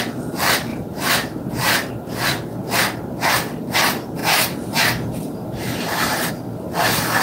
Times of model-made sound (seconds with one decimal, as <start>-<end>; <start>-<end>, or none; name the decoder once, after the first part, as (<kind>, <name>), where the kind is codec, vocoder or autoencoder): 0.7-1.9 (vocoder, BigVGAN v2); 4.2-6.3